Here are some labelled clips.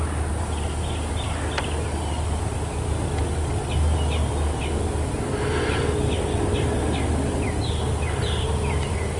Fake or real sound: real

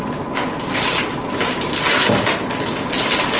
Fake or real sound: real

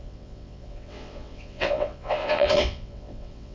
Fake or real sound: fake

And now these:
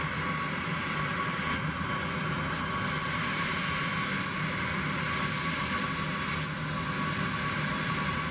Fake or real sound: real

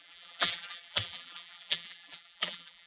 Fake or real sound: fake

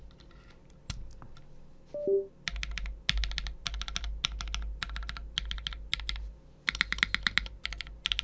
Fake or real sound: real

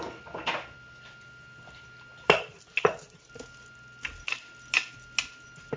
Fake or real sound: real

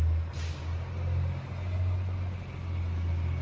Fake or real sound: real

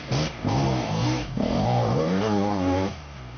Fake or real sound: fake